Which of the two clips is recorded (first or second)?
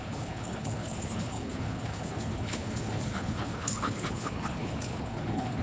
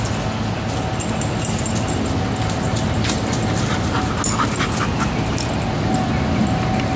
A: second